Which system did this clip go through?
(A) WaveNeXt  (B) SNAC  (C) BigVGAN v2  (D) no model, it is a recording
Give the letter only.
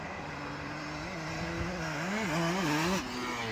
D